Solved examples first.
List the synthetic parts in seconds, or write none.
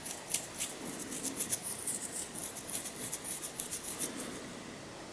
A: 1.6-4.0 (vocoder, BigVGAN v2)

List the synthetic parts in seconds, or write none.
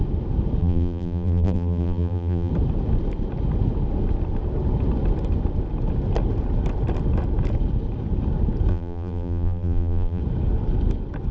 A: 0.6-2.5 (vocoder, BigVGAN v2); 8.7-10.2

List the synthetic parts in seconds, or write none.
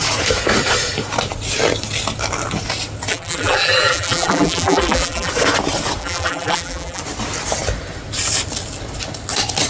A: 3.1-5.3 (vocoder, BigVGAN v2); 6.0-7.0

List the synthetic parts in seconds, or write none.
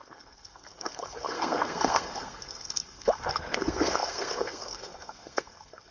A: 0.0-5.9 (codec, SNAC)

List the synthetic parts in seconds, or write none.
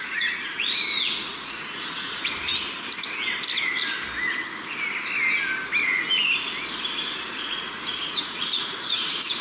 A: 0.0-0.8 (vocoder, Vocos); 1.3-2.5; 7.3-9.4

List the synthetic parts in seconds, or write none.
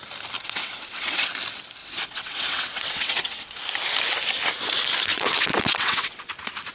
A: 0.4-1.3 (vocoder, WaveNeXt); 1.8-3.6; 5.1-6.3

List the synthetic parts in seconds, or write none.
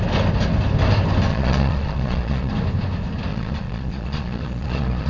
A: 1.3-2.5 (vocoder, Vocos); 3.3-5.1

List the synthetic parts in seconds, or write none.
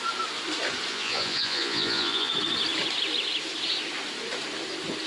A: 0.9-2.3 (vocoder, Vocos)